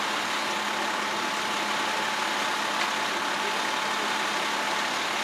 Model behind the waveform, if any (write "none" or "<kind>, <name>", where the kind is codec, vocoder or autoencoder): none